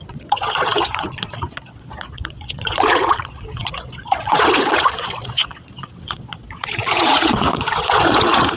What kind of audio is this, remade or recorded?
remade